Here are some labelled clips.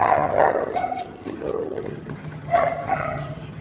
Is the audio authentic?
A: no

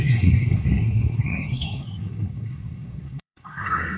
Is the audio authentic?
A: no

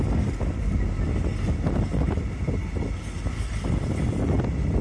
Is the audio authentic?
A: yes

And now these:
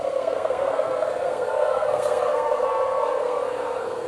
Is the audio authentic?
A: no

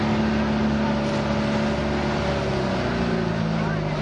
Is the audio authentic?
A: yes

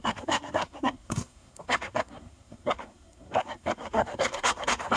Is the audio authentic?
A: no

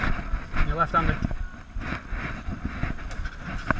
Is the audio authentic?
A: yes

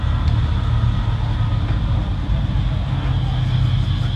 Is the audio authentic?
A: yes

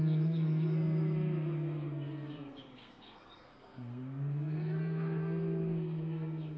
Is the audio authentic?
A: no